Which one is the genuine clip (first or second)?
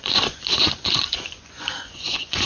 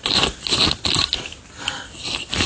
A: second